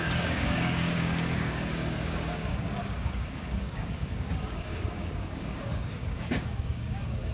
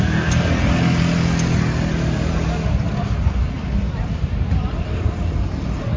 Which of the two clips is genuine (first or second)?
second